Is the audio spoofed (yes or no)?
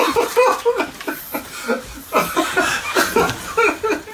no